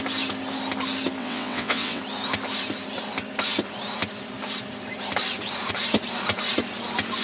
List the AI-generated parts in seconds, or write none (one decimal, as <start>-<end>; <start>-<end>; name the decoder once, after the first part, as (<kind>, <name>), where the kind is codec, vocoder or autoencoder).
1.2-2.0 (vocoder, WaveNeXt)

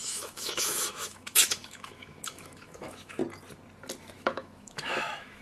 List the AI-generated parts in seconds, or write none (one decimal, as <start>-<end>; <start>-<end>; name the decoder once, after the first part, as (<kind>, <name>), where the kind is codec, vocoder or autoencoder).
0.0-3.2 (autoencoder, DAC-VAE); 4.0-5.4

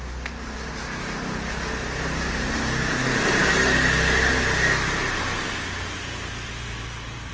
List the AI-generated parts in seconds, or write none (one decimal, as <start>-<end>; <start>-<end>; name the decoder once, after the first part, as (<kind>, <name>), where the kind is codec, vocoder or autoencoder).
none

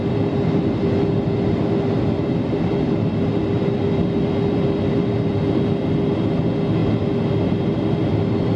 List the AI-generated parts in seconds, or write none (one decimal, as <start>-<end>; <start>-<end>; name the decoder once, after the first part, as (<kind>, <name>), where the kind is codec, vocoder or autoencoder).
none

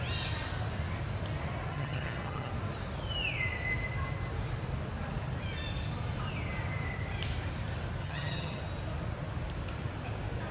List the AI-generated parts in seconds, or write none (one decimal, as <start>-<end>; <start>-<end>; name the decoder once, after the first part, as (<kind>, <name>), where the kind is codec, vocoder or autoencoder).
1.7-2.5 (vocoder, HiFi-GAN); 8.0-8.6

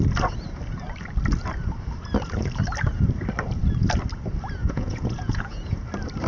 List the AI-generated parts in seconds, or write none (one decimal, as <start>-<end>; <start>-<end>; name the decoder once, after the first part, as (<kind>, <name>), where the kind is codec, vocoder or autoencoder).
4.6-5.8 (vocoder, Vocos)

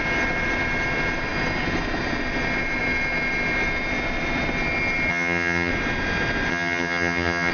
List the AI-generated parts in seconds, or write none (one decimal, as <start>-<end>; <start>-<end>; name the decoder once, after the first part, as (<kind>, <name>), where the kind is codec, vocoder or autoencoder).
5.1-5.7 (vocoder, HiFi-GAN); 6.5-7.5